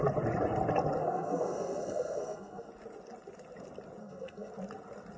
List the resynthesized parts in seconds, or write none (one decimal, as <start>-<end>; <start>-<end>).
1.0-2.7; 4.0-4.5